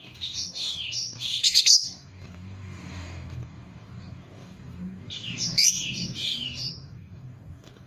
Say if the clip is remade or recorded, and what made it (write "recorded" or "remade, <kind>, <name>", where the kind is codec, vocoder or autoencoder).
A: remade, codec, DAC